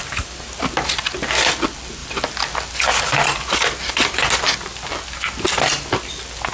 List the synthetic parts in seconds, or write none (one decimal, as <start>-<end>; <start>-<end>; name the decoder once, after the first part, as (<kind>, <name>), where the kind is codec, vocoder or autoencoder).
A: 0.0-0.6 (vocoder, BigVGAN v2)